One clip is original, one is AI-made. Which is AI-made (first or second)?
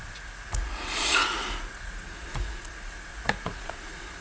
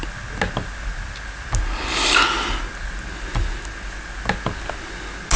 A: first